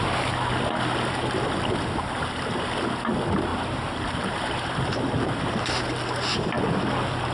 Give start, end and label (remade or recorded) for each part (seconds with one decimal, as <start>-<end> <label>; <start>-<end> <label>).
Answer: 0.0-3.5 recorded; 3.5-5.4 remade; 5.4-7.3 recorded